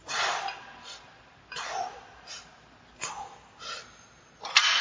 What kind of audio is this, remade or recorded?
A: recorded